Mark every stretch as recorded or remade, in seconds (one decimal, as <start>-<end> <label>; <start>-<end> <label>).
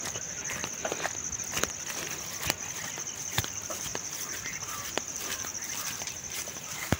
0.0-0.6 remade; 0.6-3.2 recorded; 3.2-7.0 remade